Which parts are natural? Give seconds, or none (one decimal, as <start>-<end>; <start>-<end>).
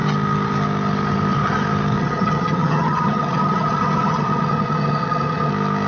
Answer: 0.0-2.0; 5.5-5.9